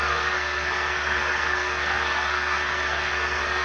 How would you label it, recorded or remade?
remade